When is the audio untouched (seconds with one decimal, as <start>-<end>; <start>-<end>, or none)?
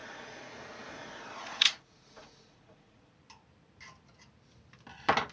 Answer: 0.5-0.9; 3.1-5.3